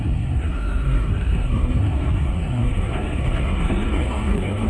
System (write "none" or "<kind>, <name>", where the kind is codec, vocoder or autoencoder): codec, SNAC